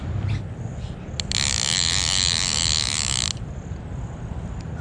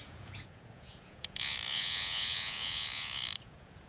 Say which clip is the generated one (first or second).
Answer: second